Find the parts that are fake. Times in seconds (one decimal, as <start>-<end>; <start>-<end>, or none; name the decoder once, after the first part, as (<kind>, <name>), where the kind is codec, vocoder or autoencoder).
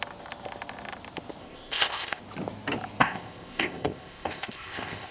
1.4-2.2 (codec, ZipCodec); 3.0-5.1